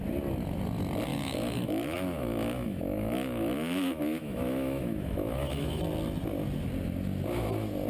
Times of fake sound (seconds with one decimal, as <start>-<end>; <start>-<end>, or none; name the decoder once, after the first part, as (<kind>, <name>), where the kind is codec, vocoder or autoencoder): 1.1-5.8 (autoencoder, DAC-VAE)